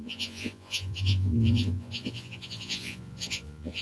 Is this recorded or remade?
remade